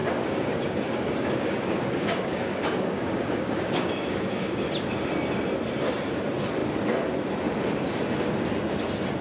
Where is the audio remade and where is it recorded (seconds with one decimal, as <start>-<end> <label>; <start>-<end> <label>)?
0.0-4.7 remade; 4.7-9.2 recorded